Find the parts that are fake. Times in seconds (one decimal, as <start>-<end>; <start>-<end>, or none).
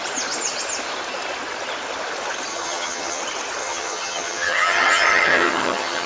2.5-3.2; 3.6-6.1